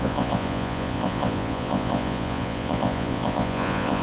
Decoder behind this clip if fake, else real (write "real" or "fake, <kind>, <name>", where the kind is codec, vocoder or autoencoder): fake, vocoder, Vocos